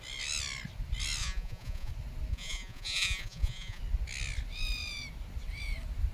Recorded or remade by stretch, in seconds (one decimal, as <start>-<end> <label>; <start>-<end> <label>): 0.0-1.2 recorded; 1.2-1.9 remade; 1.9-2.3 recorded; 2.3-3.8 remade; 3.8-6.1 recorded

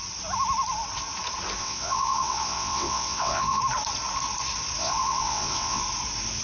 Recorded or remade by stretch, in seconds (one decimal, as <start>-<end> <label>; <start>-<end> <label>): 0.0-1.6 recorded; 1.6-3.6 remade; 3.6-4.8 recorded; 4.8-5.8 remade; 5.8-6.4 recorded

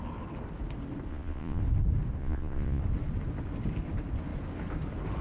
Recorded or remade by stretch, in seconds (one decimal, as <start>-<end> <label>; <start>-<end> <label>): 0.0-1.1 recorded; 1.1-1.6 remade; 1.6-2.2 recorded; 2.2-2.8 remade; 2.8-5.2 recorded

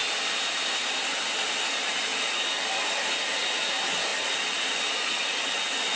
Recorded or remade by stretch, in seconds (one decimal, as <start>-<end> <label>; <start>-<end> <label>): 0.0-6.0 recorded

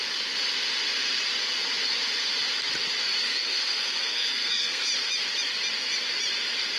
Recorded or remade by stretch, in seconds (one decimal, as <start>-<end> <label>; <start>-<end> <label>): 0.0-3.2 recorded; 3.2-4.9 remade; 4.9-6.8 recorded